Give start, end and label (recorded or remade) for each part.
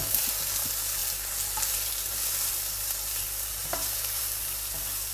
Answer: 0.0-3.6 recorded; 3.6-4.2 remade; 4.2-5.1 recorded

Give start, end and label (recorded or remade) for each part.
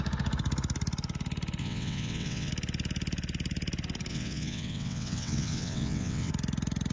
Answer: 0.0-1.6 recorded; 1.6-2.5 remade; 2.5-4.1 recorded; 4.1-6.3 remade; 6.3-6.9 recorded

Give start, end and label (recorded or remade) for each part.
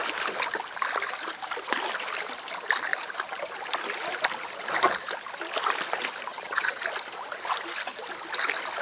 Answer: 0.0-6.3 recorded; 6.3-6.8 remade; 6.8-8.8 recorded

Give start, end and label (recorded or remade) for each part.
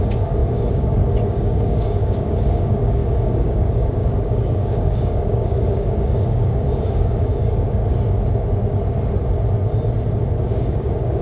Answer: 0.0-7.8 remade; 7.8-10.4 recorded; 10.4-11.2 remade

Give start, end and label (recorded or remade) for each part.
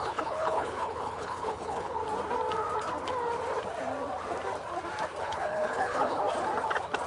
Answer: 0.0-2.0 remade; 2.0-5.2 recorded; 5.2-6.2 remade; 6.2-7.1 recorded